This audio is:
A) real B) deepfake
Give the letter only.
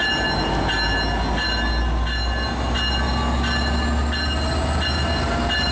A